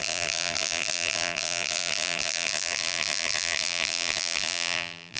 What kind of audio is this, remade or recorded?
remade